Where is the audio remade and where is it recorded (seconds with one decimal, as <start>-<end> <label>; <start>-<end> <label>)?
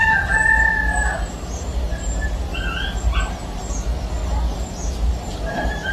0.0-1.3 recorded; 1.3-2.5 remade; 2.5-3.2 recorded; 3.2-4.2 remade; 4.2-4.7 recorded; 4.7-5.9 remade